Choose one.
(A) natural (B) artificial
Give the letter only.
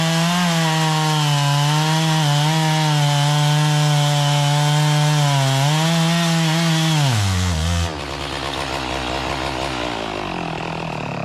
A